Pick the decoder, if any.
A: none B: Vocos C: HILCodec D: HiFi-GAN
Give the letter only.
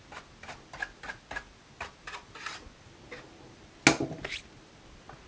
A